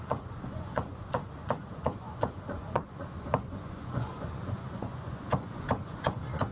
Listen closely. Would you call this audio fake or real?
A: fake